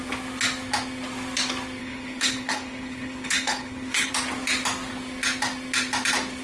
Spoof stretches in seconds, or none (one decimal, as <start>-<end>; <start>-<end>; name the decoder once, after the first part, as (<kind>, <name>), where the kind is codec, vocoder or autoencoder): 1.8-4.1 (codec, HILCodec)